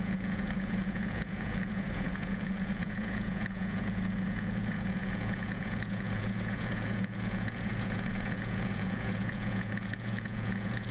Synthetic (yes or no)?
yes